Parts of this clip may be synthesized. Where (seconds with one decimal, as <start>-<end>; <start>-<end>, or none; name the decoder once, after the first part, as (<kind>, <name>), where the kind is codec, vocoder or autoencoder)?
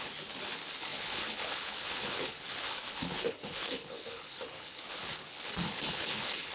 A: 0.0-6.5 (codec, HILCodec)